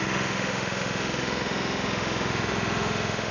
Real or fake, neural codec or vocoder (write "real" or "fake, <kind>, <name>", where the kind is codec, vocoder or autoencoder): fake, autoencoder, DAC-VAE